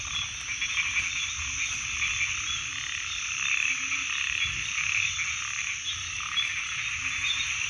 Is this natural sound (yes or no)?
yes